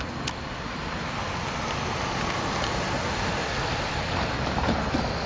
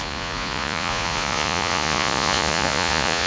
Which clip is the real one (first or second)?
first